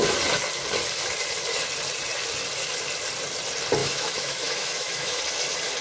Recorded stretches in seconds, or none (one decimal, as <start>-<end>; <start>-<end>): 0.0-3.8; 5.2-5.8